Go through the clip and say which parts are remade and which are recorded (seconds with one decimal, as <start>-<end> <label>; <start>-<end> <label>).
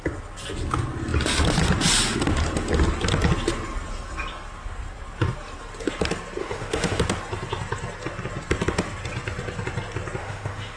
0.0-6.4 recorded; 6.4-7.0 remade; 7.0-10.2 recorded; 10.2-10.8 remade